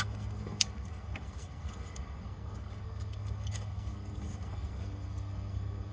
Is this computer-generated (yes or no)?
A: yes